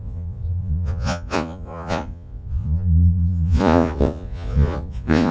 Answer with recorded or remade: remade